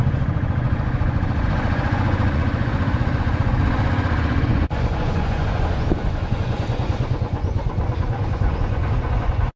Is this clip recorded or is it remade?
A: remade